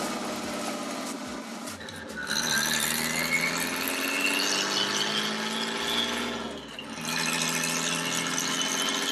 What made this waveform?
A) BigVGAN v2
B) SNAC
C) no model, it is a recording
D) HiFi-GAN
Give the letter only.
C